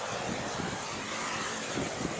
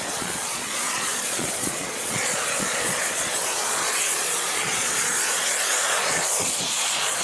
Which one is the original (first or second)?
first